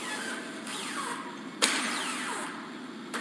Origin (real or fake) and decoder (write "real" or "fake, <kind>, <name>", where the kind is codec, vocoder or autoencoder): real